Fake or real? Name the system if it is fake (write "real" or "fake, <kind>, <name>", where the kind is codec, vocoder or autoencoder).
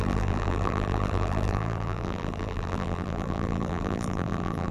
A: fake, vocoder, BigVGAN v2